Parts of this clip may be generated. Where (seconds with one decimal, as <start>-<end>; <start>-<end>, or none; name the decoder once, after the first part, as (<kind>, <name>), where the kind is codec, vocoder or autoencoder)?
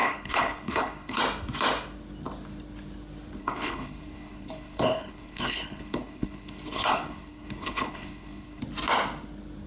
0.0-1.2 (codec, HILCodec); 3.4-8.6